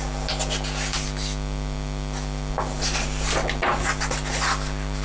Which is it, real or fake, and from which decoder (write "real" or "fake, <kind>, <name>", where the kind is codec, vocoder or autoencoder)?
real